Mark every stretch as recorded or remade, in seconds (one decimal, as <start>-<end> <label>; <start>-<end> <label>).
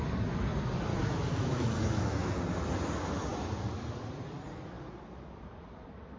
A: 0.0-0.9 recorded; 0.9-2.4 remade; 2.4-6.2 recorded